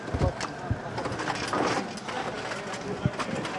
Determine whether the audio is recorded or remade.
recorded